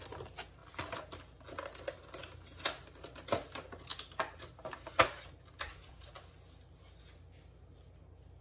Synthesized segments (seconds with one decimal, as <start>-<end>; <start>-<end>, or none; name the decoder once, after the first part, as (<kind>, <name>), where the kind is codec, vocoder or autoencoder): none